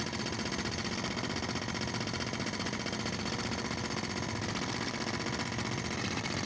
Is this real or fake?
real